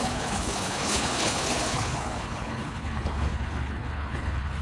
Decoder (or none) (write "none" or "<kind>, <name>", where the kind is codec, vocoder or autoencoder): codec, HILCodec